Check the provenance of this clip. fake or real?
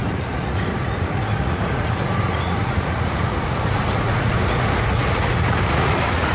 fake